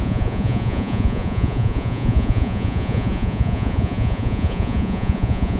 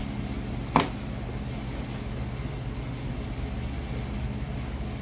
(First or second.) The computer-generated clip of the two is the first